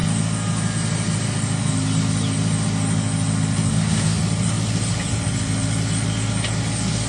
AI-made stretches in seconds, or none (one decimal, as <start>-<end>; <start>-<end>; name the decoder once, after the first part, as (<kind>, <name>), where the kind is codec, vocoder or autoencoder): 3.7-4.2 (codec, DAC)